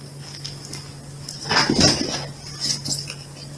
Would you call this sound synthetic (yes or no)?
no